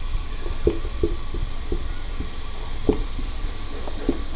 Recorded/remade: remade